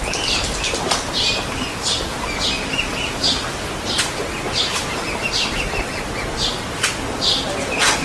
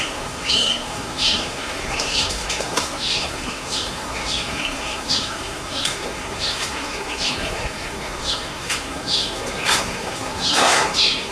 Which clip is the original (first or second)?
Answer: first